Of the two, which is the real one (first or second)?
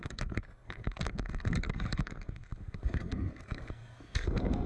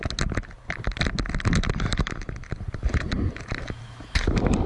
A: second